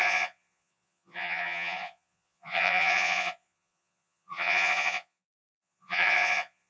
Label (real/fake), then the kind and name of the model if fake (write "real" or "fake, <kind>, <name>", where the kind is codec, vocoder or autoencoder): fake, vocoder, Vocos